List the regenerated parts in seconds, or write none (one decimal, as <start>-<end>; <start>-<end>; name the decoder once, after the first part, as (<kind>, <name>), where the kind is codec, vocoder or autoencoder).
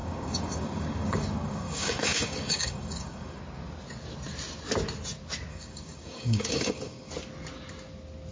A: 0.0-3.4 (codec, DAC); 5.5-7.1